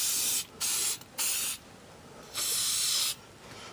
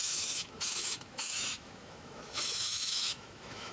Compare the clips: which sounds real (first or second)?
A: first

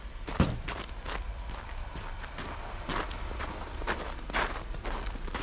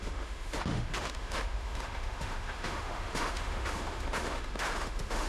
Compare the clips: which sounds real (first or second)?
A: first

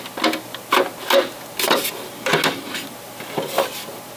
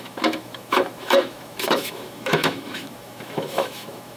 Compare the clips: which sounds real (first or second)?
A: first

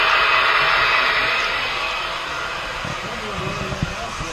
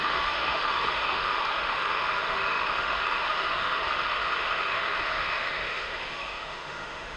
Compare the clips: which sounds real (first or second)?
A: first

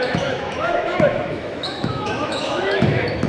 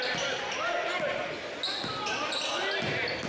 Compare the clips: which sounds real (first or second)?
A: second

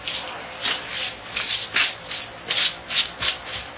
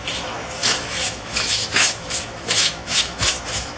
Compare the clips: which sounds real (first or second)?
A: first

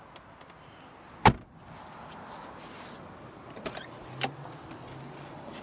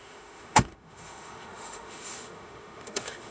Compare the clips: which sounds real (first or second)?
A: first